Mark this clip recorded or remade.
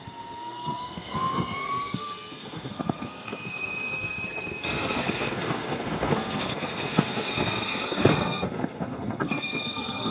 remade